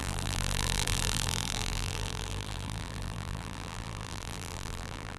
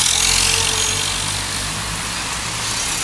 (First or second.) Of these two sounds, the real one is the second